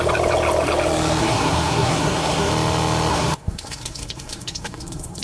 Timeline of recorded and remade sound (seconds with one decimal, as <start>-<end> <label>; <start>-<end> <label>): 0.0-1.2 recorded; 1.2-2.5 remade; 2.5-3.1 recorded; 3.1-5.2 remade